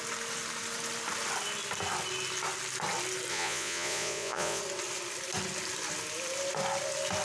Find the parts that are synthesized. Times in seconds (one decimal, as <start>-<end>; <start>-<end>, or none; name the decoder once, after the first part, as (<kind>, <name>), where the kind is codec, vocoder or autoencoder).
3.3-4.6 (vocoder, Vocos)